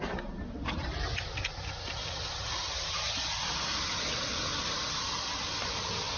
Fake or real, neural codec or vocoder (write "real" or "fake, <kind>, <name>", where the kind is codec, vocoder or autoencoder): real